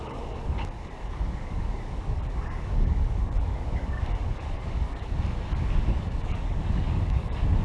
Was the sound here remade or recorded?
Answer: remade